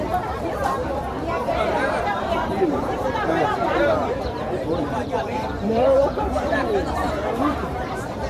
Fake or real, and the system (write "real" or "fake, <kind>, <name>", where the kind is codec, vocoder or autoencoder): fake, vocoder, BigVGAN v2